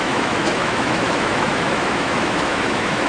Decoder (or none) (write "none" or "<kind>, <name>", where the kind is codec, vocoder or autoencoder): autoencoder, DAC-VAE